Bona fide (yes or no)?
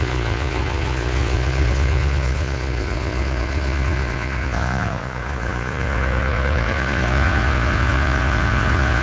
no